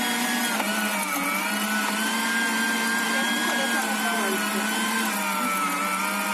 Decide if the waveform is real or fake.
real